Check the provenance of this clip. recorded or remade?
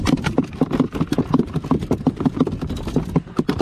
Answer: recorded